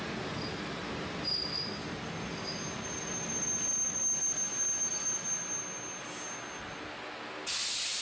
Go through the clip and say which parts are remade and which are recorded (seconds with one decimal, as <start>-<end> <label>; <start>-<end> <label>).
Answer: 0.0-8.0 recorded